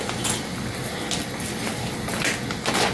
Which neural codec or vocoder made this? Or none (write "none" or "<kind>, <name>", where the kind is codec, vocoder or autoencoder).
none